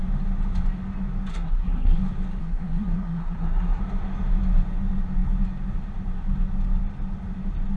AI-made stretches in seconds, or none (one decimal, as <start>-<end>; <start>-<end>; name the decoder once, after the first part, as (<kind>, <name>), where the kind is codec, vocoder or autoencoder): 1.3-2.0 (codec, SNAC); 2.4-3.8